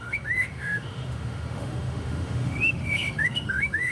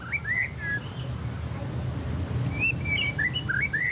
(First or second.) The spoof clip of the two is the first